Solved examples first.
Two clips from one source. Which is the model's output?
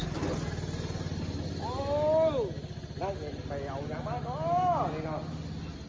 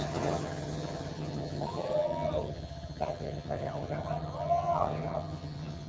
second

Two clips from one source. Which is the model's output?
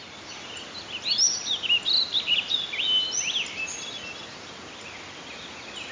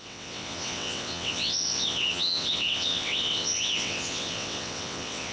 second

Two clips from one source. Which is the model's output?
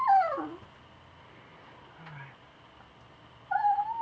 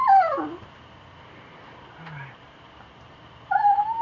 second